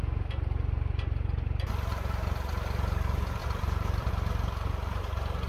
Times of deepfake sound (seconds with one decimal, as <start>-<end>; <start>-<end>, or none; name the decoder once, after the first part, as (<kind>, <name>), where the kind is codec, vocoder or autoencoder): 1.9-2.5 (vocoder, BigVGAN v2); 3.4-4.1